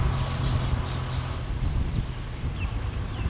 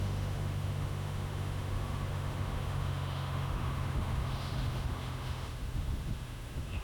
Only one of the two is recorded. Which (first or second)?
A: first